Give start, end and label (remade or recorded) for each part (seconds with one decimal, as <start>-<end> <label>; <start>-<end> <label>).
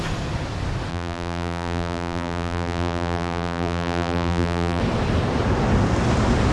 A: 0.0-0.9 recorded; 0.9-4.8 remade; 4.8-6.5 recorded